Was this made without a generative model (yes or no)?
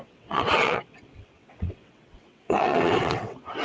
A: no